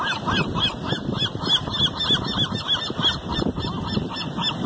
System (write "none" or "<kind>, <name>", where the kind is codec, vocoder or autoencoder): none